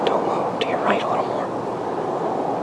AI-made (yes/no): no